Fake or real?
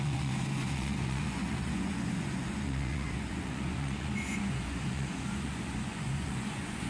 fake